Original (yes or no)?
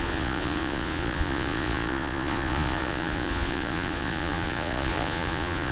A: no